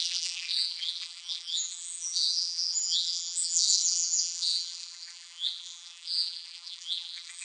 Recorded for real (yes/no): no